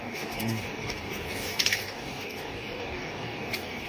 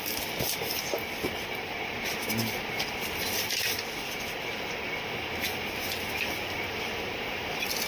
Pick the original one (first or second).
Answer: second